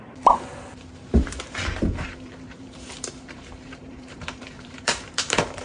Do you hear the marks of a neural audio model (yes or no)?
yes